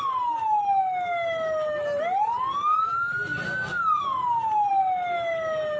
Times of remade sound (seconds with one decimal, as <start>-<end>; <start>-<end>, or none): none